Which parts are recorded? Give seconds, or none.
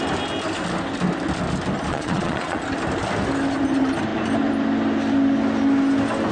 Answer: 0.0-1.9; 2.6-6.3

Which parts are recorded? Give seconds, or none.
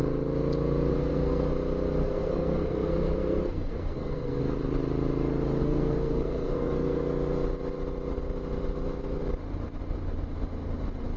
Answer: 0.0-0.9; 1.5-2.0; 4.4-5.6; 7.0-11.2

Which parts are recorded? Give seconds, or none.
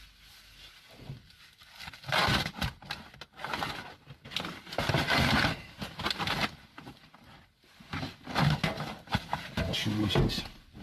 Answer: 0.0-6.4; 7.4-10.8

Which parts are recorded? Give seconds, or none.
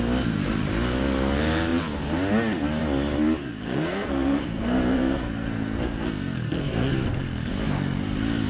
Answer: 0.0-3.4; 7.5-8.5